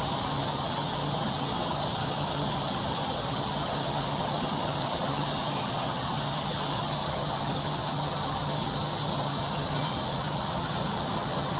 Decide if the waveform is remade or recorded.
remade